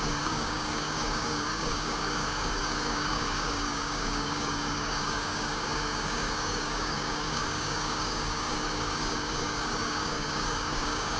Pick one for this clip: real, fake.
fake